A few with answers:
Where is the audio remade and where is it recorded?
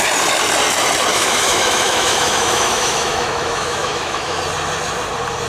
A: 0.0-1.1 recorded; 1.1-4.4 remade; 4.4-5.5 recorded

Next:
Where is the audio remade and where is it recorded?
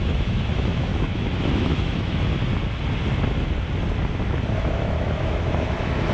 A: 0.0-2.3 remade; 2.3-4.6 recorded; 4.6-6.1 remade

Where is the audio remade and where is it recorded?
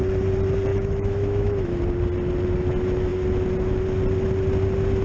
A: 0.0-0.7 recorded; 0.7-1.8 remade; 1.8-5.0 recorded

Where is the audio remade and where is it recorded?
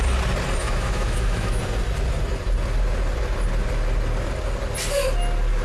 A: 0.0-0.6 recorded; 0.6-1.6 remade; 1.6-5.6 recorded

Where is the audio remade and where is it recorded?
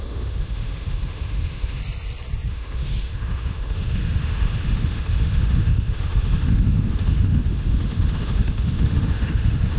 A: 0.0-1.8 remade; 1.8-2.5 recorded; 2.5-9.8 remade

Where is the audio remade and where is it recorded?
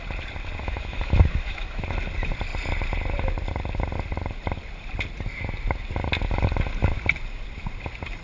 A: 0.0-0.6 recorded; 0.6-1.8 remade; 1.8-8.2 recorded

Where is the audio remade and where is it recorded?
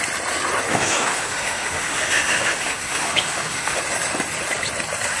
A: 0.0-0.7 recorded; 0.7-3.8 remade; 3.8-5.2 recorded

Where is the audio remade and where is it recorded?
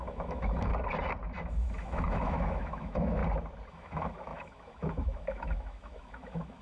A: 0.0-0.7 remade; 0.7-1.4 recorded; 1.4-3.2 remade; 3.2-3.7 recorded; 3.7-6.6 remade